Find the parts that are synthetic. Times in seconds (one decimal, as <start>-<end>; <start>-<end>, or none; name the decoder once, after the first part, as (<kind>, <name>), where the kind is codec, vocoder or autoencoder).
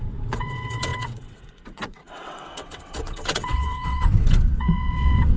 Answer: 0.0-5.4 (vocoder, WaveNeXt)